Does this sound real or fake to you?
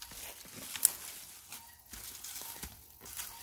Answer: real